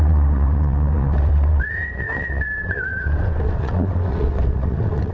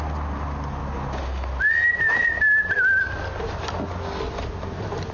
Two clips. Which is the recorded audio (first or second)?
second